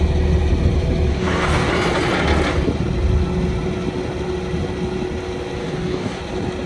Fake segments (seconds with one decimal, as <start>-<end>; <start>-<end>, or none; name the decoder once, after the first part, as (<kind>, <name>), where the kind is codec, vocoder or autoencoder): 1.1-1.7 (codec, DAC); 5.6-6.2